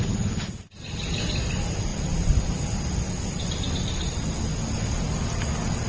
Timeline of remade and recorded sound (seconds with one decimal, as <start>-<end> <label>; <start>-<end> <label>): 0.0-5.9 recorded